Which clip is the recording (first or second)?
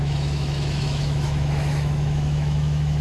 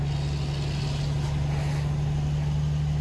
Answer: second